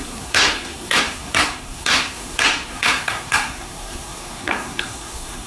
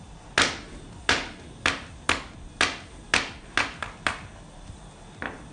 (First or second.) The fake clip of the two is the first